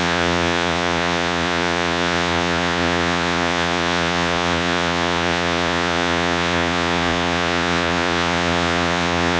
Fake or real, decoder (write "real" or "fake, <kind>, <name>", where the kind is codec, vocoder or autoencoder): fake, vocoder, Vocos